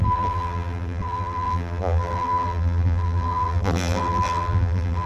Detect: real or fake fake